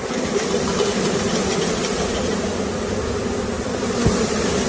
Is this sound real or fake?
real